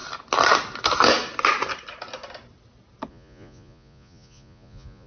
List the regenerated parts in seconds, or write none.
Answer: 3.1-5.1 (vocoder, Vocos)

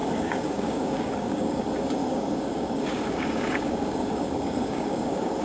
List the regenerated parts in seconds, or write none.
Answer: 0.0-1.6 (codec, DAC); 2.0-5.4